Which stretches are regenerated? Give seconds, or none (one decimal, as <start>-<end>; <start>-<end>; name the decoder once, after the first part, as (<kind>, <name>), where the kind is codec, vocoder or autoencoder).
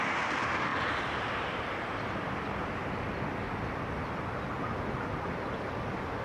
none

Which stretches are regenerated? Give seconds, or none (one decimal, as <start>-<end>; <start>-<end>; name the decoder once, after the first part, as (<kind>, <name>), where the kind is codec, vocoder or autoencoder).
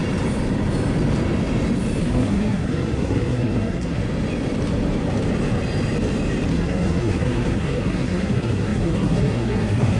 2.0-4.0 (codec, SNAC); 6.5-10.0